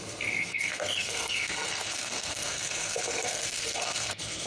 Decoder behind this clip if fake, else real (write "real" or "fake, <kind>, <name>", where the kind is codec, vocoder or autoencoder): fake, codec, SNAC